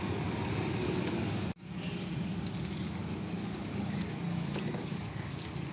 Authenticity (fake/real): fake